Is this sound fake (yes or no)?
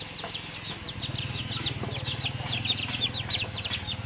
yes